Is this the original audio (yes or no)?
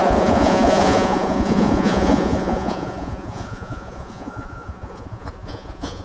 no